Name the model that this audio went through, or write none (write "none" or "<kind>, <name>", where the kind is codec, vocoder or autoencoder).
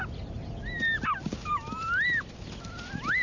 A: none